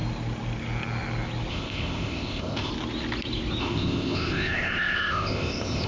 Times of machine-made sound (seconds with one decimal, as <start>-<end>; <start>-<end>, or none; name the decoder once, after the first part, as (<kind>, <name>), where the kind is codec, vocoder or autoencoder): 1.5-2.7 (codec, ZipCodec); 3.6-5.9